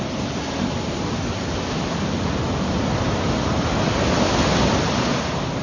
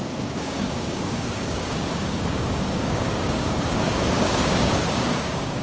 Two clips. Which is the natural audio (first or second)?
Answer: first